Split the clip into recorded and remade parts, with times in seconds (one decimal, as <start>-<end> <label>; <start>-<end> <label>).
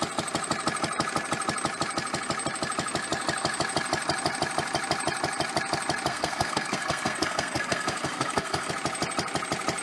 0.0-6.1 recorded; 6.1-8.7 remade; 8.7-9.8 recorded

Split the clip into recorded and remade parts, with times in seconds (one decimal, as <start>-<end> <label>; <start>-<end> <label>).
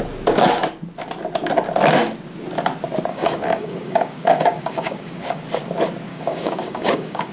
0.0-3.1 recorded; 3.1-5.4 remade; 5.4-6.1 recorded; 6.1-7.3 remade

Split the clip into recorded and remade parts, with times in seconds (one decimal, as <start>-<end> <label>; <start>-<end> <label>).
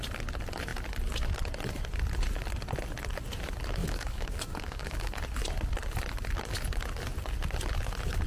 0.0-3.8 recorded; 3.8-5.2 remade; 5.2-8.3 recorded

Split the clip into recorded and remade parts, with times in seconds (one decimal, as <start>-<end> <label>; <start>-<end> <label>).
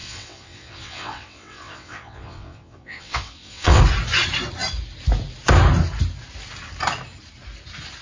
0.0-3.8 remade; 3.8-8.0 recorded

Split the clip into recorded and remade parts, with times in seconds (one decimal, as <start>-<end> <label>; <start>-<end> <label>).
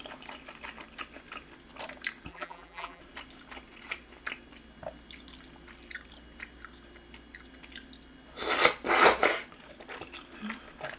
0.0-2.3 recorded; 2.3-3.0 remade; 3.0-11.0 recorded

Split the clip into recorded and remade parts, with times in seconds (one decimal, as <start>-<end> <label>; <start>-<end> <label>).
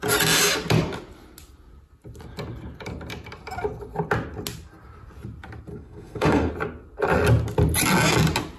0.0-5.7 recorded; 5.7-6.5 remade; 6.5-8.6 recorded